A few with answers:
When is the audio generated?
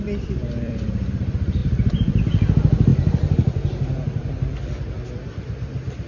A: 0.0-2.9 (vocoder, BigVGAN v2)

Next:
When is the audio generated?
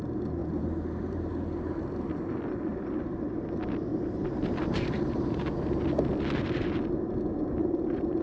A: 0.4-1.3 (vocoder, BigVGAN v2); 3.9-5.5; 7.6-8.2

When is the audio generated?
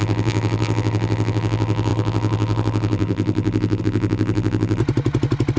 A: 0.0-4.8 (vocoder, BigVGAN v2)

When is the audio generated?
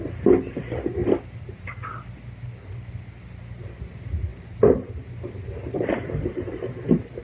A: 1.0-1.9 (vocoder, BigVGAN v2); 4.3-5.9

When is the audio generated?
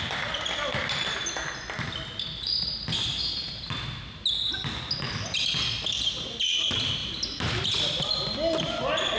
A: none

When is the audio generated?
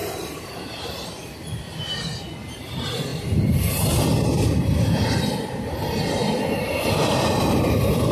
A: 0.0-1.1 (vocoder, BigVGAN v2); 3.1-7.6